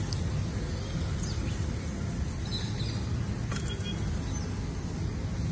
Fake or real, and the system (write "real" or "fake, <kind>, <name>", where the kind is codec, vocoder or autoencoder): real